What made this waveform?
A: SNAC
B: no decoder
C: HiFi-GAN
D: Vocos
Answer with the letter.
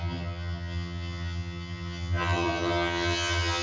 C